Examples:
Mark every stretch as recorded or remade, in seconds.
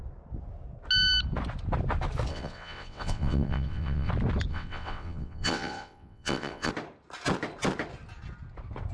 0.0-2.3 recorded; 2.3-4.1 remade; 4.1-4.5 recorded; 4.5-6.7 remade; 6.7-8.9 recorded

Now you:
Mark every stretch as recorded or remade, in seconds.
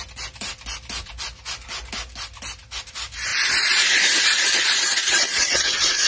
0.0-5.0 recorded; 5.0-6.1 remade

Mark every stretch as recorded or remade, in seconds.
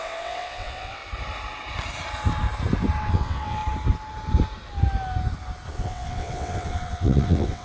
0.0-1.0 remade; 1.0-3.0 recorded; 3.0-3.6 remade; 3.6-5.7 recorded; 5.7-7.6 remade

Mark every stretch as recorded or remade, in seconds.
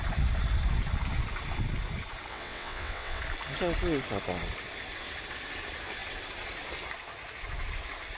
0.0-2.3 recorded; 2.3-3.2 remade; 3.2-8.2 recorded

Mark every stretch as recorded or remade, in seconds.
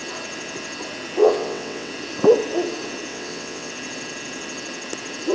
0.0-1.2 recorded; 1.2-1.9 remade; 1.9-3.1 recorded; 3.1-3.7 remade; 3.7-5.3 recorded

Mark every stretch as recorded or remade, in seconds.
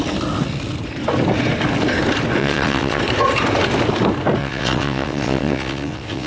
0.0-2.4 recorded; 2.4-3.0 remade; 3.0-4.4 recorded; 4.4-6.3 remade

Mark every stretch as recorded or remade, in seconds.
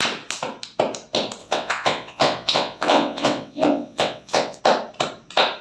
0.0-1.4 recorded; 1.4-4.6 remade; 4.6-5.6 recorded